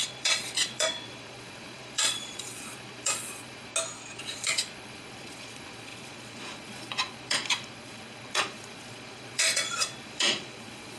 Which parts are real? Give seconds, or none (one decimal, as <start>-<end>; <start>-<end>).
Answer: 3.7-4.2